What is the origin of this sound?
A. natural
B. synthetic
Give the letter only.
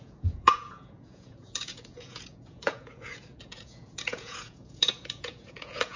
B